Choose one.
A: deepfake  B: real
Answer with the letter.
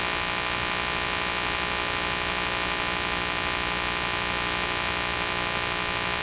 B